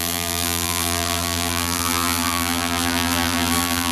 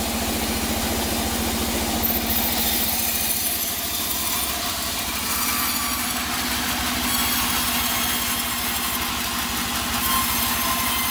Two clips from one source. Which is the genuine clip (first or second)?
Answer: second